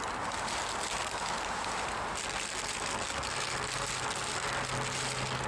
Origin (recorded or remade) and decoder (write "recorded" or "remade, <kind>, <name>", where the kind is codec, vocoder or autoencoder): recorded